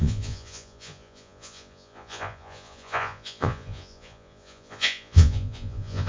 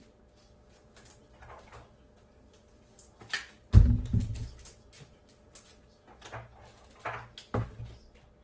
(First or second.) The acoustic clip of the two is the second